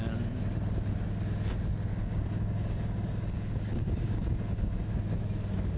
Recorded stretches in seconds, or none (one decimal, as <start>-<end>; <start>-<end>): 0.0-1.9; 4.9-5.8